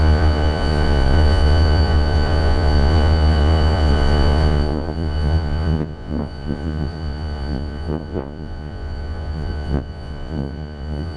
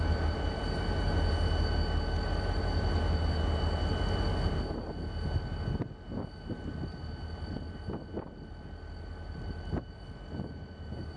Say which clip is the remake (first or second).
first